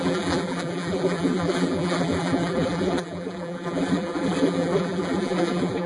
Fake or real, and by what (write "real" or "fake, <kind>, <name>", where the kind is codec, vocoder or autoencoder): fake, vocoder, BigVGAN v2